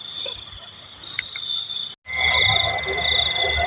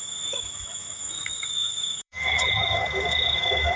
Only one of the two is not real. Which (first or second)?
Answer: second